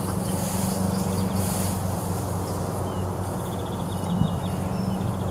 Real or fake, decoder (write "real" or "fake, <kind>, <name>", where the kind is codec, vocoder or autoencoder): real